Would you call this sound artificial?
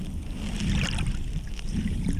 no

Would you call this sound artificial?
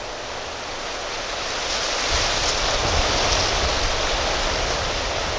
no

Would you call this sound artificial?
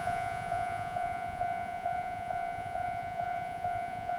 yes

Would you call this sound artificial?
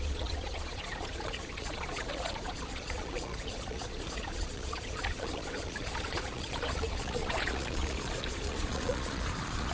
yes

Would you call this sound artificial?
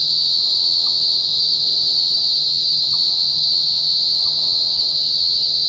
yes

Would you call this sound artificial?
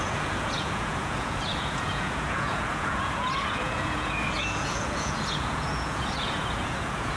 yes